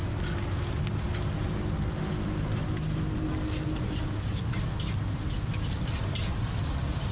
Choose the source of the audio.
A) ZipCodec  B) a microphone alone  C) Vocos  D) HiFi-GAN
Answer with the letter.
B